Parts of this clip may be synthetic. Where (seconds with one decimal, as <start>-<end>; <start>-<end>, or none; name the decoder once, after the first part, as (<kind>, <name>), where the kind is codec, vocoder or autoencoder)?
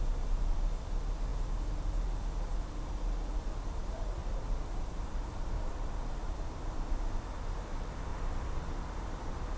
4.2-6.9 (vocoder, BigVGAN v2); 8.1-8.6